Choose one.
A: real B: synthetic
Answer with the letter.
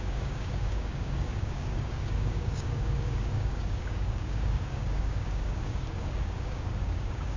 B